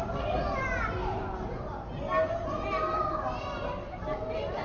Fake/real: real